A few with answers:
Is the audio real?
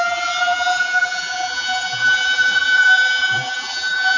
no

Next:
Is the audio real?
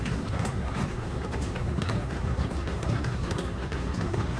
no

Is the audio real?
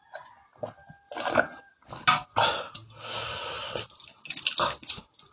yes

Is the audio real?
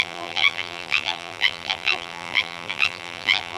no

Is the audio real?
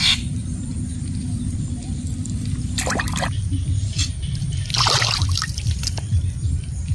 no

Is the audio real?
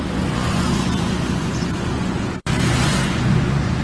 no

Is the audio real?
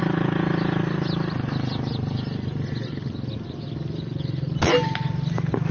yes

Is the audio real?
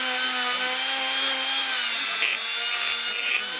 yes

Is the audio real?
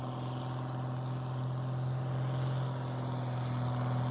yes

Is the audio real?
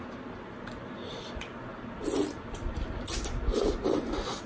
yes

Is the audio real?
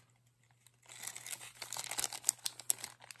yes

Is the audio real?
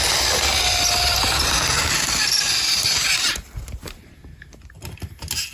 yes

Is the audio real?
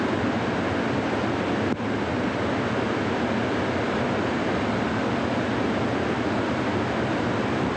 yes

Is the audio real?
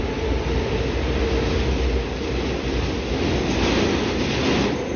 yes